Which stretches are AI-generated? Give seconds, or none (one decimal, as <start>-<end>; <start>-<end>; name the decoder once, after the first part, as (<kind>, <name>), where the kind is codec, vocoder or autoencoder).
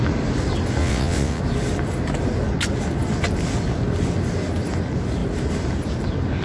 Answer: 0.8-1.4 (vocoder, WaveNeXt)